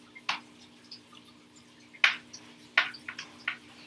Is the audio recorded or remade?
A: recorded